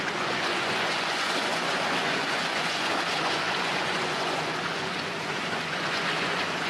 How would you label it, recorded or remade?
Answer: remade